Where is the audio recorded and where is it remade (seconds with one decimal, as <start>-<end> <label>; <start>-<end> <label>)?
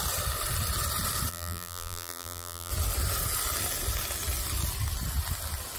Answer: 0.0-1.3 recorded; 1.3-2.7 remade; 2.7-5.8 recorded